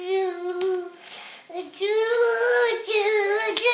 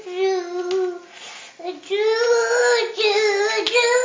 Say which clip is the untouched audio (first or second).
second